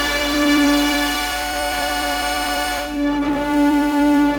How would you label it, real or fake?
fake